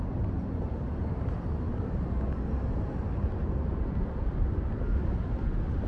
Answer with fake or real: real